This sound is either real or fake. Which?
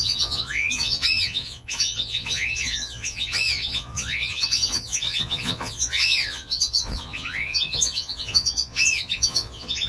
fake